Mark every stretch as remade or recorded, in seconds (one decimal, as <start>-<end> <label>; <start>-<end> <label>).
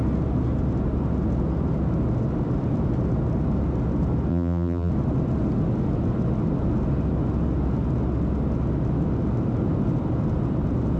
0.0-4.3 recorded; 4.3-4.9 remade; 4.9-11.0 recorded